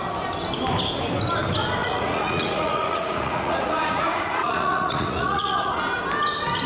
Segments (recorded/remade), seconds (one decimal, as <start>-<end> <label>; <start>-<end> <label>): 0.0-1.8 recorded; 1.8-5.8 remade; 5.8-6.7 recorded